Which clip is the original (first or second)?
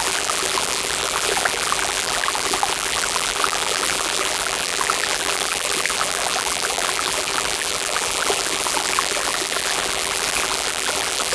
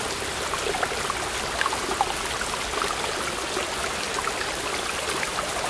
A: second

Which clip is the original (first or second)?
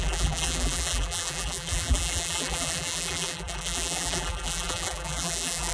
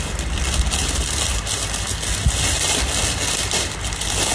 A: second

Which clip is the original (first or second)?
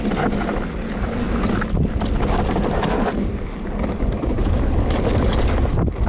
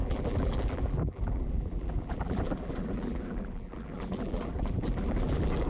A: first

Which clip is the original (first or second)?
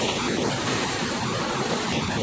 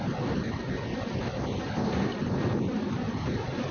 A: second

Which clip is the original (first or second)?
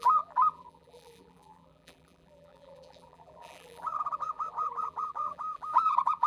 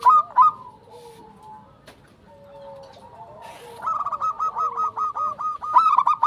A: second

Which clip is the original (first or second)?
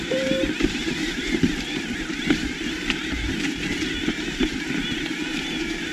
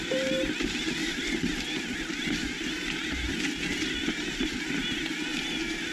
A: second